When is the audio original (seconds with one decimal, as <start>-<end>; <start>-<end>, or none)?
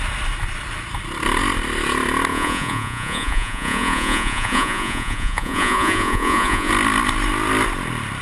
0.0-2.3; 6.7-8.2